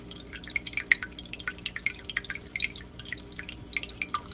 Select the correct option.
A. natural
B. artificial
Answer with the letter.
A